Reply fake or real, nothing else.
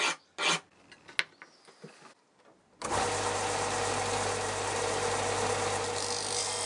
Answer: real